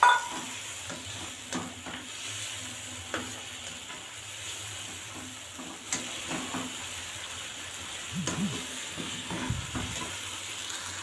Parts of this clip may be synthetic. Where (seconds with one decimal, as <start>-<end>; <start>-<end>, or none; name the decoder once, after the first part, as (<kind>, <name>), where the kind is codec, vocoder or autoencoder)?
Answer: 8.7-9.5 (codec, SNAC)